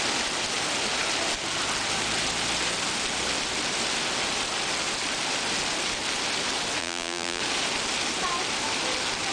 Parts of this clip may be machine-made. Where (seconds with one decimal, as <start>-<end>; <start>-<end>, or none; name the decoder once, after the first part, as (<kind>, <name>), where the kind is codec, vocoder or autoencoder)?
6.8-7.4 (vocoder, BigVGAN v2)